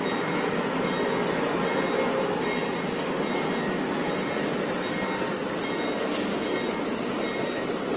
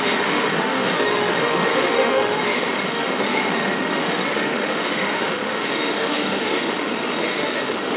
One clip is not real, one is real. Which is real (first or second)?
first